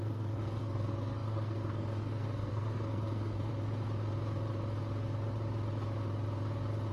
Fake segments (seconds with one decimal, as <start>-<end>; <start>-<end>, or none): 0.0-3.5